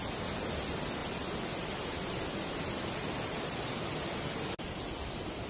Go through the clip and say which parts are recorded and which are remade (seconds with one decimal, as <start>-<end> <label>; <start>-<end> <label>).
0.0-5.5 recorded